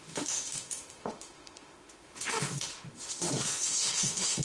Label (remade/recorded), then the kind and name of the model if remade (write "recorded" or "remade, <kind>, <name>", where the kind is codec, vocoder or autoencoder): remade, autoencoder, DAC-VAE